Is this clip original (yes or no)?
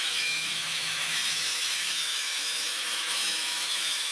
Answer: no